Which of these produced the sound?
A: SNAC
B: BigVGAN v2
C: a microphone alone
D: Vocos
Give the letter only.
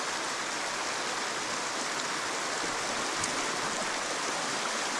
C